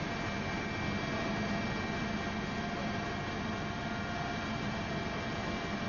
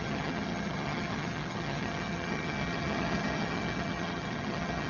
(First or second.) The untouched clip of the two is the first